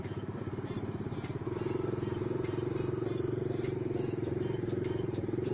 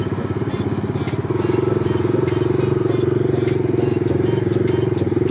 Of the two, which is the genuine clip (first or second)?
second